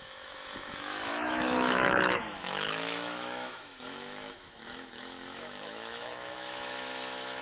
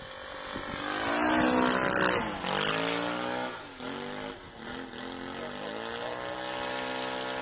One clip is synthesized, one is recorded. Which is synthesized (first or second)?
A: first